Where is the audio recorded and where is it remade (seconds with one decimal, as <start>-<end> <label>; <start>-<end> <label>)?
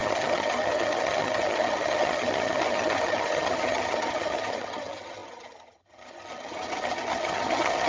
0.0-7.9 remade